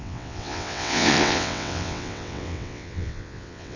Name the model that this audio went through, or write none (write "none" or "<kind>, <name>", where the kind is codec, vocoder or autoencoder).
vocoder, WaveNeXt